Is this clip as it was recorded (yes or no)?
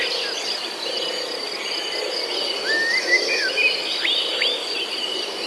yes